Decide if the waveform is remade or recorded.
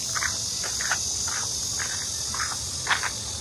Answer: recorded